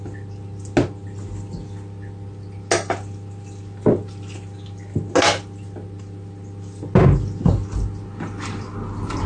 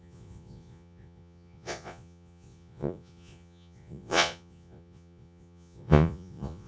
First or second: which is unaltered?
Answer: first